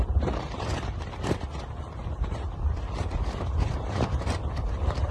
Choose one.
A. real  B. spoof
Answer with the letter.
B